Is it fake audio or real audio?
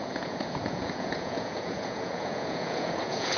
fake